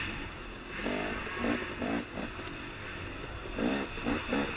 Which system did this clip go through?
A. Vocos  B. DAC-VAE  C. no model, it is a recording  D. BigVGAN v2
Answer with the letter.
C